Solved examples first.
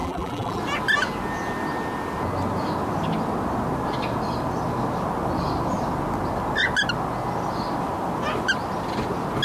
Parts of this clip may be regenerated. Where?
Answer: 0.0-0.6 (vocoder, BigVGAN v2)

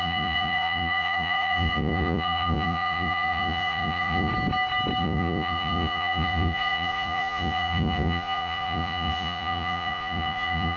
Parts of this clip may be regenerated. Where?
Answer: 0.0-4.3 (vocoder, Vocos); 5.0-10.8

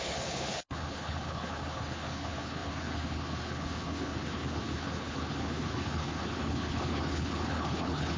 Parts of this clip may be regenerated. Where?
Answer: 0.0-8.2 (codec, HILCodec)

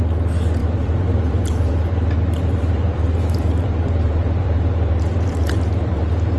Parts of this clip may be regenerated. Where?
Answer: 0.6-1.9 (vocoder, BigVGAN v2); 2.4-6.4

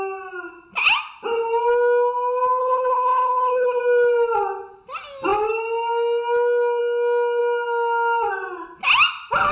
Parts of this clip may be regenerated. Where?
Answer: 2.6-3.8 (codec, HILCodec)